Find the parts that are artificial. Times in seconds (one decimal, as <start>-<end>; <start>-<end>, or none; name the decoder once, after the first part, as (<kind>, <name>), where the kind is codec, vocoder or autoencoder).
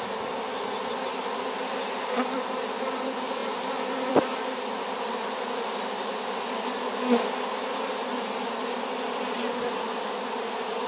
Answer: none